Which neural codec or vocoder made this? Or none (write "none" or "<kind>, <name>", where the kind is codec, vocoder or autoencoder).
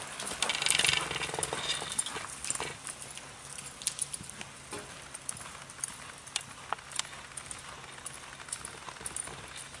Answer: none